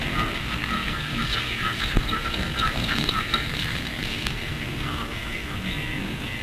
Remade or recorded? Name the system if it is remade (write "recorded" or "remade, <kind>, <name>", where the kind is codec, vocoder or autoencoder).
remade, codec, SNAC